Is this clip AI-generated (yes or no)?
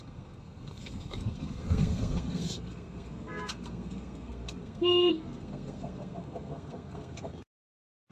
yes